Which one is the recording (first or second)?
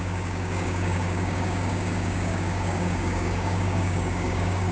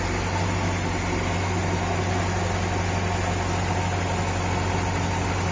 second